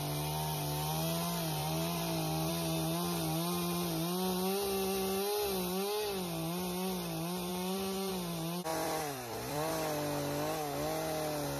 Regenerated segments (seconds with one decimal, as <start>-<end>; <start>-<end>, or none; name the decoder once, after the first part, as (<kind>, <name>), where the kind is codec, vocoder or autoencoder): 1.6-2.5 (vocoder, BigVGAN v2); 7.5-8.1; 8.7-9.7